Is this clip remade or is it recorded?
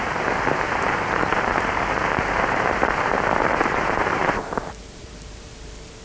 remade